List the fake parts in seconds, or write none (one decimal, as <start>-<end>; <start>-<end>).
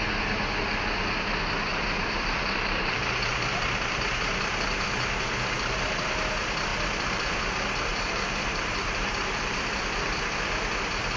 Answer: 1.7-6.3; 6.7-7.4; 7.9-9.7